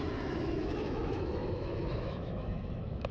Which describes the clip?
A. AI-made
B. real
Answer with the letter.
A